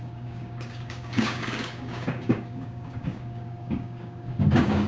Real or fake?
fake